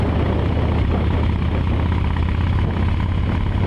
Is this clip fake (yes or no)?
no